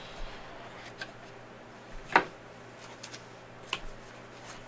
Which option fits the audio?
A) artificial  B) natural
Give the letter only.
B